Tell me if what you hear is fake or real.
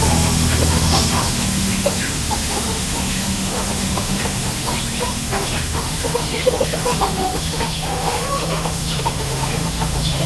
fake